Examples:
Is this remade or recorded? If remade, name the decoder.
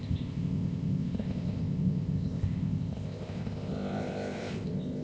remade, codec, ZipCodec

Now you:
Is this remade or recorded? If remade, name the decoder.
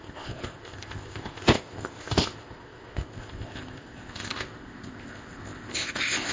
remade, codec, ZipCodec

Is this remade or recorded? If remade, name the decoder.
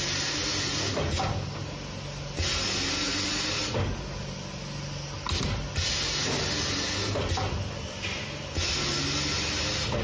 recorded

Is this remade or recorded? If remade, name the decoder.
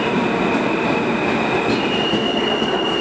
recorded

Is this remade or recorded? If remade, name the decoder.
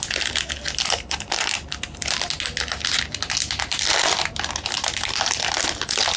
recorded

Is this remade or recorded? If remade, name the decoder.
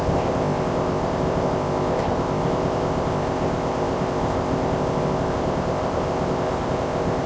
remade, codec, ZipCodec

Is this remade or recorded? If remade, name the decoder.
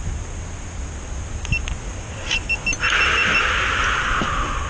recorded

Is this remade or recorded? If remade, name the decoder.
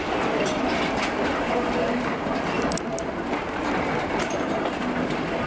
recorded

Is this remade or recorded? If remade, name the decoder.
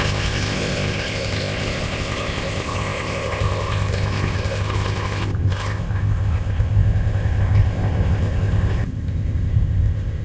remade, codec, ZipCodec